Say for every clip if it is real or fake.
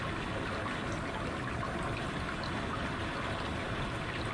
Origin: real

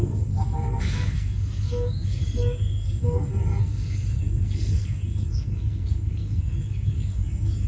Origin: fake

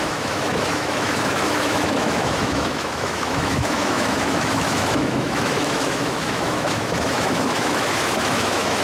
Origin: fake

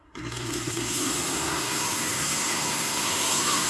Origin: fake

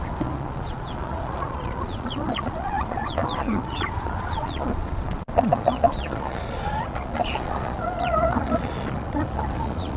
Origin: fake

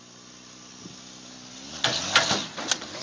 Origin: real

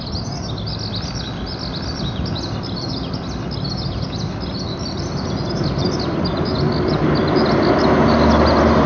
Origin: real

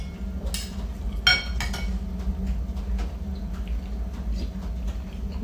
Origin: real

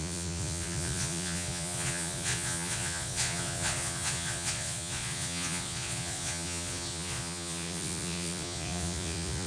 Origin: fake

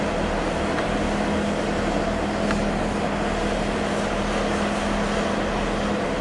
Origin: real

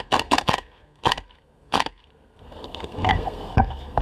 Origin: fake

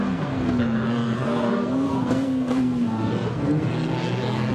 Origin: fake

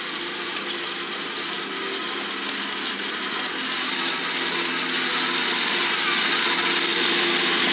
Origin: real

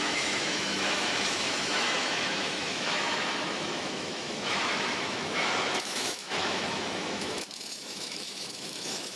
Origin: fake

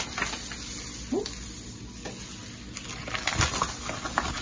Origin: real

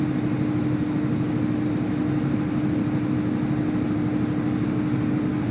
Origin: real